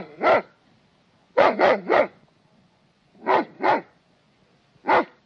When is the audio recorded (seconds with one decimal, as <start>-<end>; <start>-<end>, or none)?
0.0-1.2; 4.4-5.3